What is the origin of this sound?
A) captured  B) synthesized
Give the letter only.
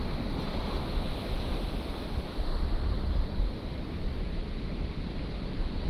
A